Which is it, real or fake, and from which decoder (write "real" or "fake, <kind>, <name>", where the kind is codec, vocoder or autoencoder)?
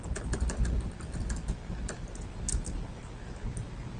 real